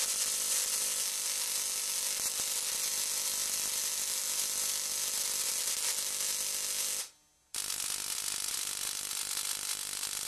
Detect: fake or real real